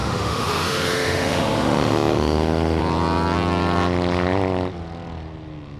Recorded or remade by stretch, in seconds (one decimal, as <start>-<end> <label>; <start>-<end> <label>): 0.0-2.8 remade; 2.8-5.8 recorded